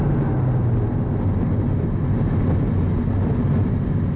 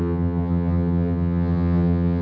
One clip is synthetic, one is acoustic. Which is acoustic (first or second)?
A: first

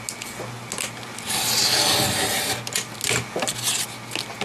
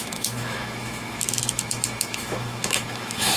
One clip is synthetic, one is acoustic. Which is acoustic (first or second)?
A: first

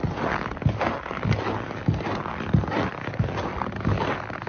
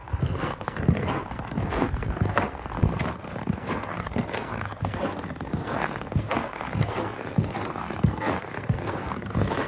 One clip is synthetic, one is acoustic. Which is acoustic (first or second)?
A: first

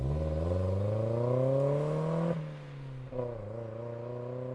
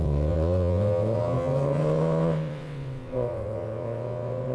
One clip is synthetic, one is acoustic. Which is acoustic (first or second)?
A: first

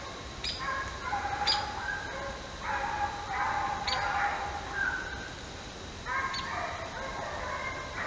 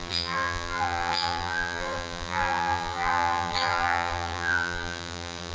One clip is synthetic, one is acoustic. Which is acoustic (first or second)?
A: first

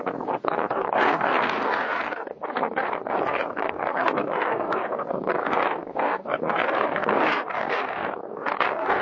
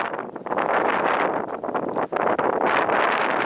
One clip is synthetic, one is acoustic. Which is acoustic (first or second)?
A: second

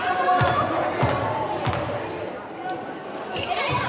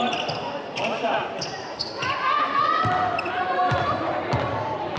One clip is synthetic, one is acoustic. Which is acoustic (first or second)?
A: first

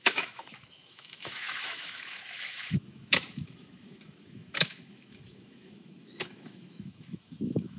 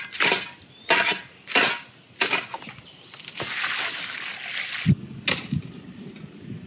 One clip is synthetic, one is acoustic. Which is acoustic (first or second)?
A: second